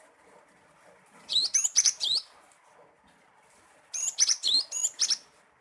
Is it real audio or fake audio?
real